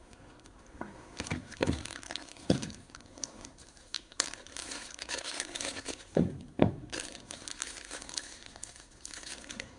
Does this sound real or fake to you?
fake